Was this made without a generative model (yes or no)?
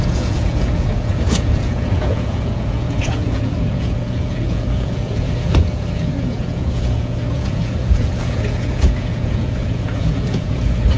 no